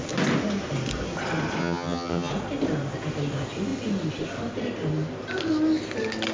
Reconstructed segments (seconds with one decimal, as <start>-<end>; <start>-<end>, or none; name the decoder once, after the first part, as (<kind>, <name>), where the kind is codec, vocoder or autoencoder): 1.6-2.3 (vocoder, HiFi-GAN)